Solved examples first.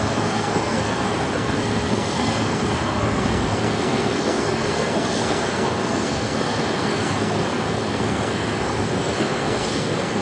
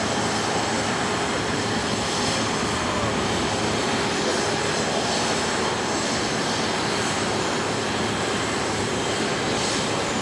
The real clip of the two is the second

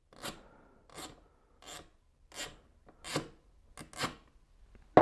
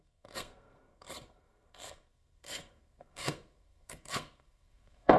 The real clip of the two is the first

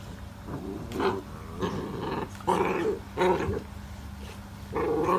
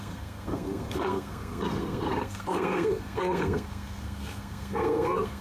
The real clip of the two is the first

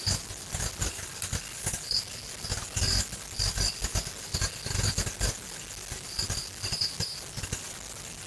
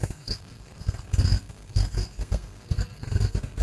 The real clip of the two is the first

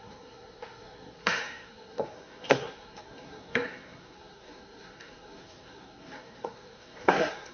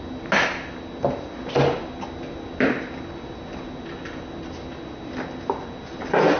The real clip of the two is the second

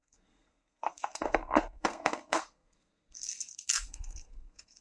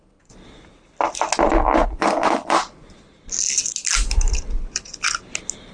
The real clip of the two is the second